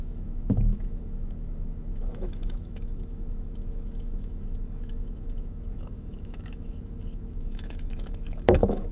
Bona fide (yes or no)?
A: no